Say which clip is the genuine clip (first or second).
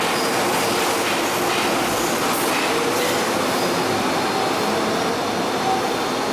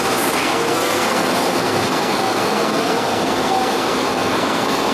first